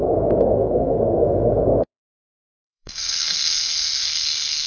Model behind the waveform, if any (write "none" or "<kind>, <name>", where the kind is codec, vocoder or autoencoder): codec, SNAC